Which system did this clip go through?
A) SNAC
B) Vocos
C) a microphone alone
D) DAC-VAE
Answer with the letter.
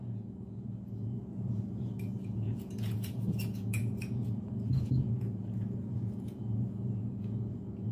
B